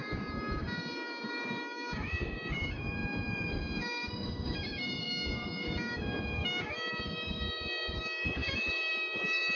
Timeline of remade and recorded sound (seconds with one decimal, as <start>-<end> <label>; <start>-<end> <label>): 0.0-9.6 remade